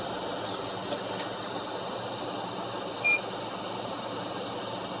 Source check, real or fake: real